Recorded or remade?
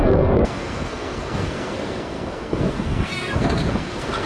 remade